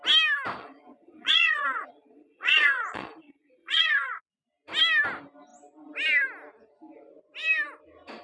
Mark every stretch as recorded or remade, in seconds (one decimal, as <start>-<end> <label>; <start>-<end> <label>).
0.0-0.6 recorded; 0.6-4.2 remade; 4.2-8.2 recorded